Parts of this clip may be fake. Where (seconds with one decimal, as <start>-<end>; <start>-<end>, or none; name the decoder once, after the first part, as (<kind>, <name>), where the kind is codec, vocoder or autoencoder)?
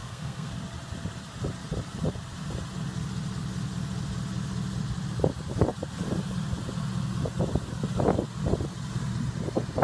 0.0-0.5 (codec, SNAC)